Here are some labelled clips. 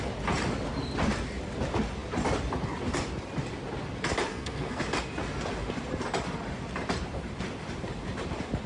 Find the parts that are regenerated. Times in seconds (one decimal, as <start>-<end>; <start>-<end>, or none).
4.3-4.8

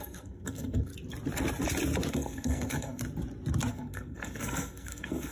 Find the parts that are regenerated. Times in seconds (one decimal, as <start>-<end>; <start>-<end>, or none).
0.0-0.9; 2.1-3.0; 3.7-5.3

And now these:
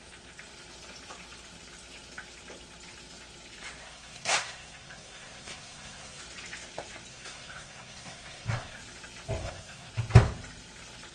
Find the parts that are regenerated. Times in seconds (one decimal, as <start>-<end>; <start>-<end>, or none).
3.8-6.2; 7.1-8.8; 9.4-9.9

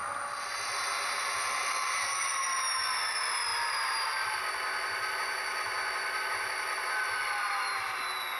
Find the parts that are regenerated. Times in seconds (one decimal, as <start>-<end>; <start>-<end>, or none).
none